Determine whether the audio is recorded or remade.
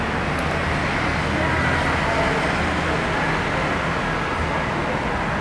recorded